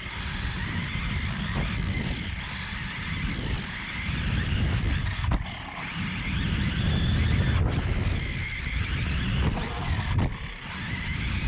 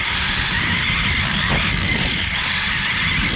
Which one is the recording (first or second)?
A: first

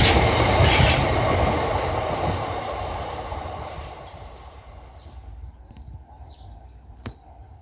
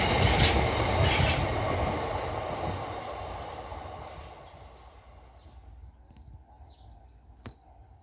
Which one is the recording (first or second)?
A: second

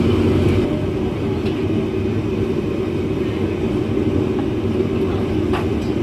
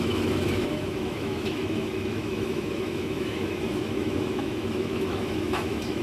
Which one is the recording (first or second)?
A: first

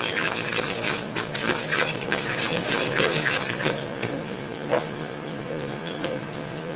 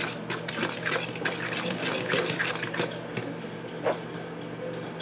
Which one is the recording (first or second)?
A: second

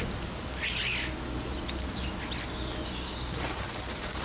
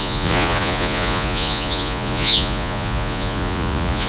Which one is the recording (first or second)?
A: first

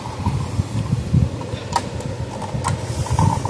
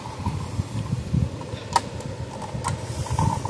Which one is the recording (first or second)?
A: first